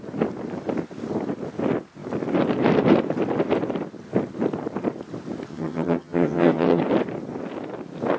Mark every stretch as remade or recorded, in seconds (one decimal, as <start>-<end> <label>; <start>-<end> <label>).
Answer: 0.0-5.5 recorded; 5.5-6.8 remade; 6.8-8.2 recorded